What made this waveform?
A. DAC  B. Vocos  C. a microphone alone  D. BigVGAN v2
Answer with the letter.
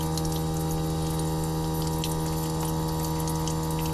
C